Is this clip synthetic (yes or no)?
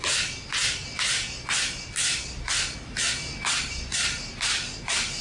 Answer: no